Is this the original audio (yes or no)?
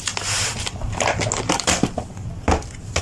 yes